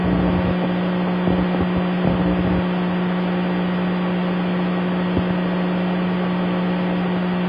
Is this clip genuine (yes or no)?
yes